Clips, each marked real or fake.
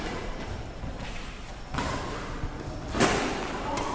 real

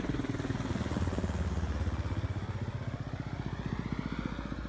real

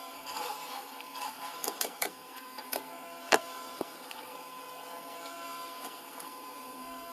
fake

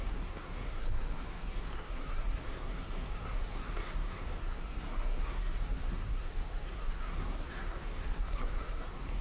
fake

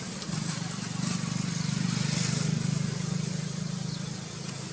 real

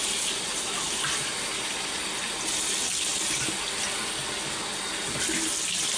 real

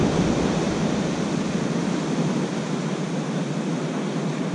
real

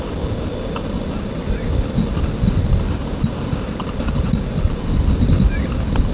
real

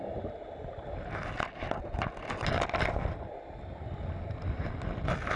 real